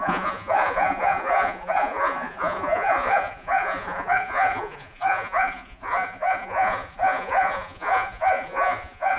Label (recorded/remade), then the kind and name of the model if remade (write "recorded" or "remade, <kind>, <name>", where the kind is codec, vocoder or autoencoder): remade, vocoder, Vocos